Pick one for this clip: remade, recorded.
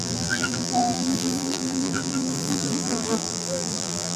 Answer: remade